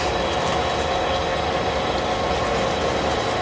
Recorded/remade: recorded